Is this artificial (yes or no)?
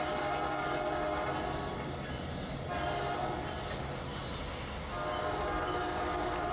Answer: no